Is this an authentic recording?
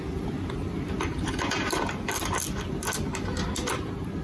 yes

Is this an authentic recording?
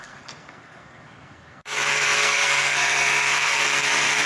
no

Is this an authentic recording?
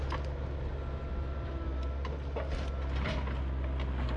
yes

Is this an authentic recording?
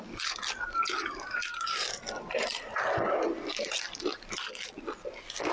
yes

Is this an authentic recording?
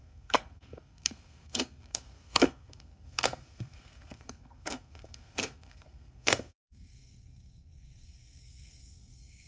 no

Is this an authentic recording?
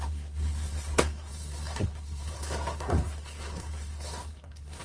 no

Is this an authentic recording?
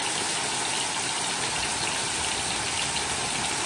yes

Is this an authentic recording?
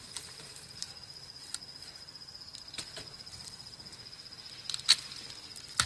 yes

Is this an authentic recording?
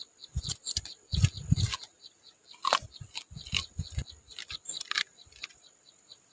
yes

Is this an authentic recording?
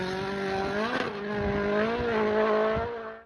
yes